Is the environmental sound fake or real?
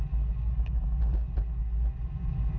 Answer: real